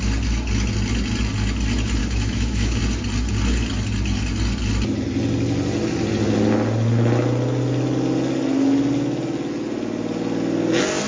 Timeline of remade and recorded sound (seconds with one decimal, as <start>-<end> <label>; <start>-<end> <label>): 0.0-2.0 recorded; 2.0-2.8 remade; 2.8-11.1 recorded